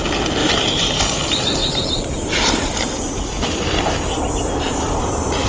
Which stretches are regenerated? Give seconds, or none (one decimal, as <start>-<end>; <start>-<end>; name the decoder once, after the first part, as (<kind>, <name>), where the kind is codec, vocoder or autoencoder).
0.4-1.0 (vocoder, BigVGAN v2); 1.6-3.4